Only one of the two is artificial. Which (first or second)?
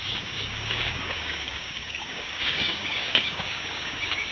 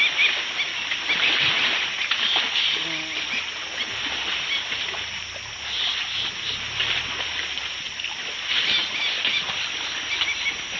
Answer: first